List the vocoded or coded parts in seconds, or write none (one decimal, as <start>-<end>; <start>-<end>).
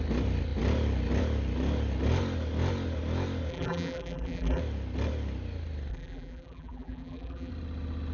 3.5-4.6; 5.9-7.5